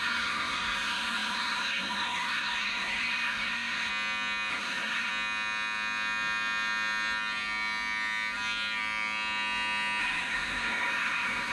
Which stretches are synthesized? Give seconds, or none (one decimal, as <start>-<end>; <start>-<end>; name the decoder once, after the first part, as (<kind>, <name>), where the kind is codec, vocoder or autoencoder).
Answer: 0.0-3.9 (codec, SNAC); 4.5-5.1; 10.0-11.5